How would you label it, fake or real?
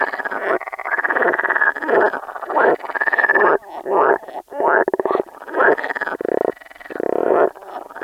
real